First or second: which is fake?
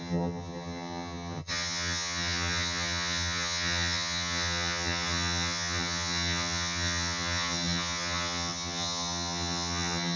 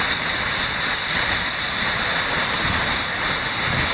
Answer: first